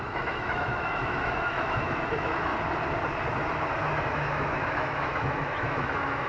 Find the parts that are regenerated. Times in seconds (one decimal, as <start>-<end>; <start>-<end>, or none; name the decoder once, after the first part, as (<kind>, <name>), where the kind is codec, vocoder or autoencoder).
0.0-2.5 (autoencoder, DAC-VAE); 4.0-6.3